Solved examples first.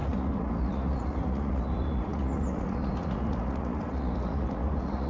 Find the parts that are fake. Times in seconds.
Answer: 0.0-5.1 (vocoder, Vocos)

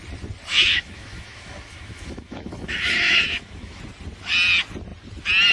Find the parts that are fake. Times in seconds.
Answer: 0.5-3.8 (autoencoder, DAC-VAE)

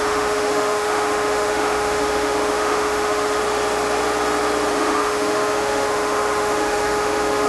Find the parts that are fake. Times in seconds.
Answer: 0.0-3.4 (autoencoder, DAC-VAE); 4.7-7.5

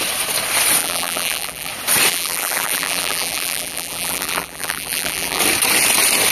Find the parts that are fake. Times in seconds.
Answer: 0.8-1.7 (vocoder, BigVGAN v2); 2.1-5.4

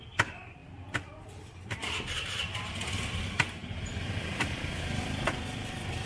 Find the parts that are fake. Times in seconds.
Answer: 0.6-2.8 (vocoder, BigVGAN v2); 3.6-6.1

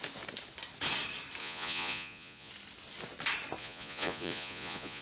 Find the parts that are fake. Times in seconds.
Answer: 1.4-2.5 (vocoder, Vocos); 3.6-5.0